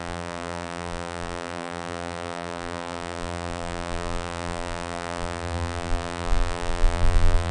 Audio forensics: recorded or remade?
remade